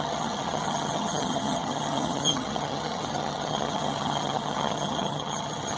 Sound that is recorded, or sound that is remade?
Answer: remade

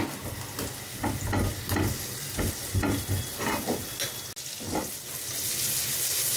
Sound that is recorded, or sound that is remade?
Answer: recorded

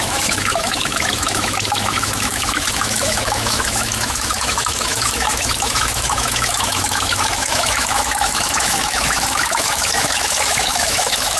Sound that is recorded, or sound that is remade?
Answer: remade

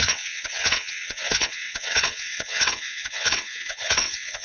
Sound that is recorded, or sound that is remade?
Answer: remade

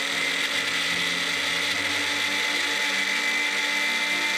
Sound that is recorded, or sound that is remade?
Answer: recorded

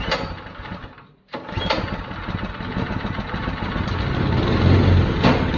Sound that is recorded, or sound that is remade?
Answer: recorded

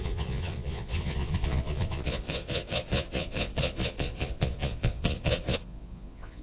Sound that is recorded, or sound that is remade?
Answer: remade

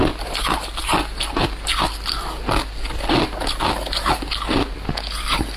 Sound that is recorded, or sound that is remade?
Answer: recorded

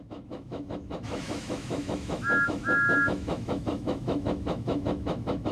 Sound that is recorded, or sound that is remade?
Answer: remade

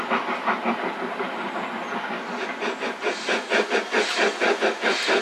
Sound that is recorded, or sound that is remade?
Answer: recorded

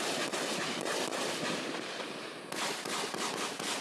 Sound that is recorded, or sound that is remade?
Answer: recorded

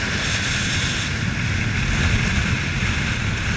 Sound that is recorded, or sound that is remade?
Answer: recorded